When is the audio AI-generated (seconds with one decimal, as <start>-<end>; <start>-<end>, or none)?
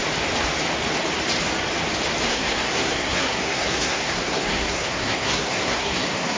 2.3-6.4